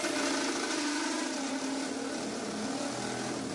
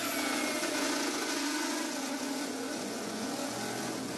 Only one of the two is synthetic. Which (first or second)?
second